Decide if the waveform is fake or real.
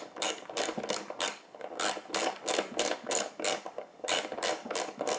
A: fake